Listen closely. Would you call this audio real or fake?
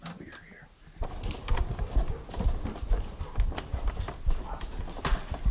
real